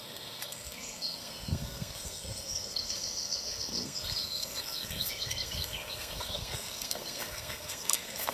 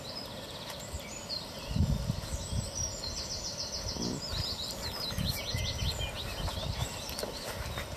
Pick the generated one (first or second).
first